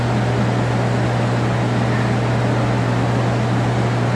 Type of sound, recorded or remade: recorded